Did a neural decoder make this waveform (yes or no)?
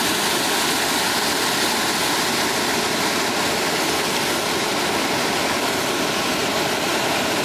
no